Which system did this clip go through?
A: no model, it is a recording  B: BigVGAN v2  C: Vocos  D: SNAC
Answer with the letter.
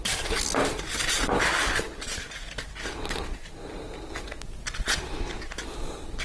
A